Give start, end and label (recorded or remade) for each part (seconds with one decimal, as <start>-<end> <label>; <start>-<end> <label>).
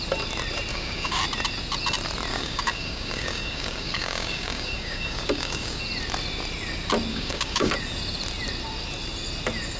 0.0-0.7 recorded; 0.7-1.2 remade; 1.2-2.3 recorded; 2.3-5.8 remade; 5.8-7.1 recorded; 7.1-7.7 remade; 7.7-9.8 recorded